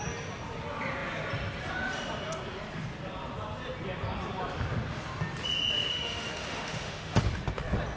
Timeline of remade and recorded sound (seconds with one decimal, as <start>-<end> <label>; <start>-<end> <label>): 0.0-5.9 recorded; 5.9-7.2 remade; 7.2-8.0 recorded